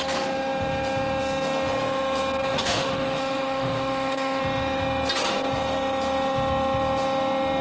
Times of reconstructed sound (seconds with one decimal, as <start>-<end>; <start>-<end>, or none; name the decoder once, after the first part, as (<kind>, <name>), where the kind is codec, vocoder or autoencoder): 2.4-4.4 (autoencoder, DAC-VAE)